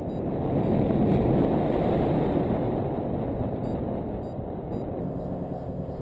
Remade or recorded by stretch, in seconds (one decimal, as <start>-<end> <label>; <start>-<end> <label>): 0.0-5.0 recorded; 5.0-6.0 remade